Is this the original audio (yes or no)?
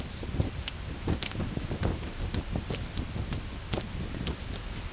yes